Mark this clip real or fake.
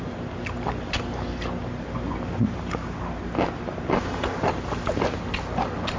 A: real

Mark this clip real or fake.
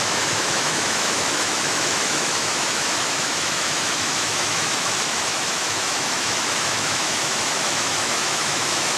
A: fake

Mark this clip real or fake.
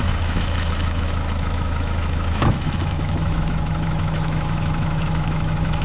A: fake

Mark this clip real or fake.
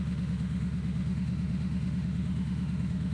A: fake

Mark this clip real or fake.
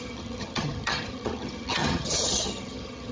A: fake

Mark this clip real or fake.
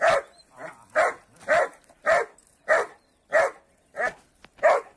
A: real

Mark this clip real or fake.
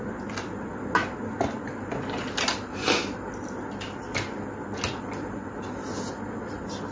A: real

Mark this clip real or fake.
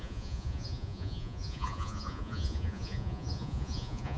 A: fake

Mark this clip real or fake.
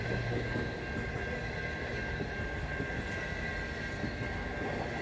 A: real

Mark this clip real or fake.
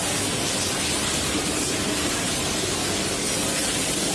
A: real